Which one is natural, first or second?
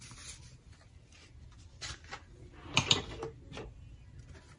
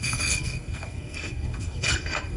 first